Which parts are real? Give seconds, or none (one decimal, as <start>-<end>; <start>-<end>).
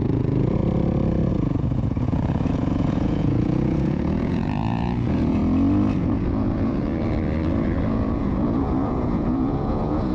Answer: 0.6-1.3; 5.4-6.0; 6.9-7.9